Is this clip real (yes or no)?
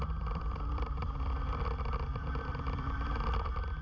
no